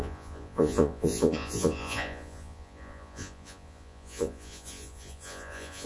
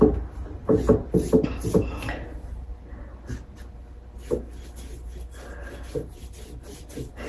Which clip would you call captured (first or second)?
second